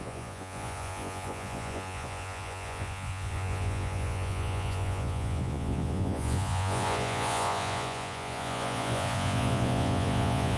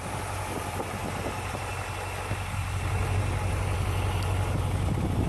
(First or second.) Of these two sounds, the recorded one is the second